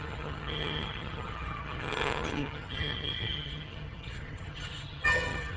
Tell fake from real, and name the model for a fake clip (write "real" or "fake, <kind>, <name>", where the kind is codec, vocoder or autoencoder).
fake, vocoder, HiFi-GAN